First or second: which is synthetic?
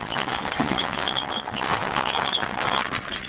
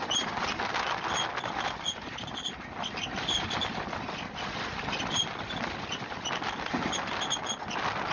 first